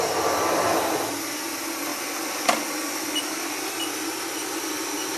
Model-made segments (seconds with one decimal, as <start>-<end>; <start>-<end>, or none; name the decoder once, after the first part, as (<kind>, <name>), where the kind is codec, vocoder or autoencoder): none